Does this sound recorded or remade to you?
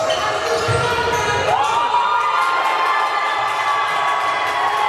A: recorded